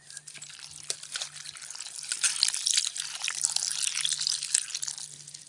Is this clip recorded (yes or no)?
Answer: yes